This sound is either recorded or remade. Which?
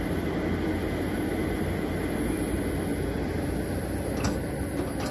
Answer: recorded